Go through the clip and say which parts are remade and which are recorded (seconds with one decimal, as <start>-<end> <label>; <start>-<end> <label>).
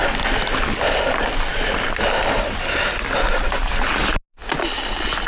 0.0-5.3 recorded